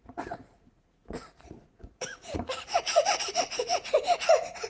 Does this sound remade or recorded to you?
remade